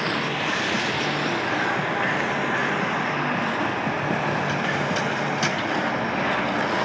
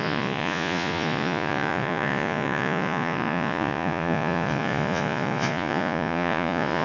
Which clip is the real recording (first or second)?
first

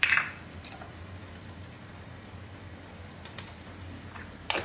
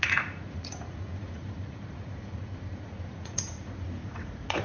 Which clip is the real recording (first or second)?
first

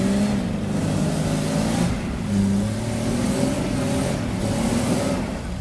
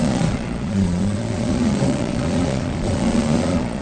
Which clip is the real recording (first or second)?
first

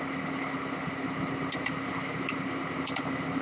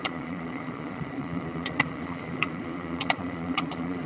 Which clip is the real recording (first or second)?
first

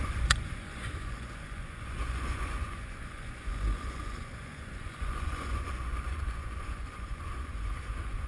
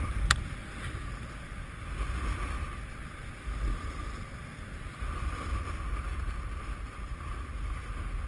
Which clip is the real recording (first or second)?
second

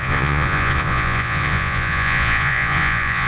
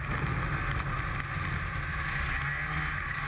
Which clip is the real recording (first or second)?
second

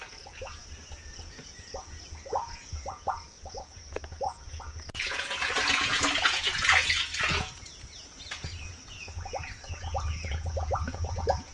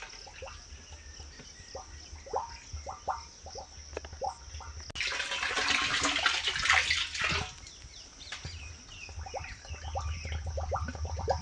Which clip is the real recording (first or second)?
second